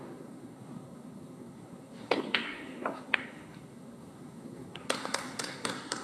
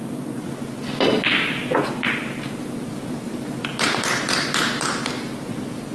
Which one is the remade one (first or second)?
first